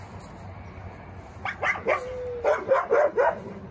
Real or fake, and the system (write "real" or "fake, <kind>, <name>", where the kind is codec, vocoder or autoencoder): real